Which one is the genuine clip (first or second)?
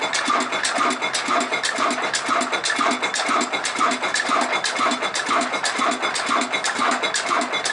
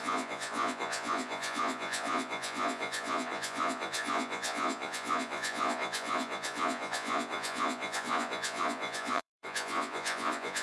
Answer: first